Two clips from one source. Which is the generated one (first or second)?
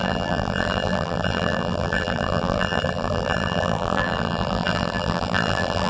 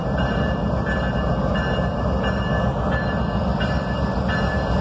first